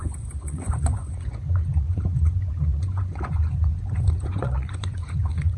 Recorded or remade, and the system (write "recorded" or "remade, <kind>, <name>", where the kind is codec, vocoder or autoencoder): remade, vocoder, Vocos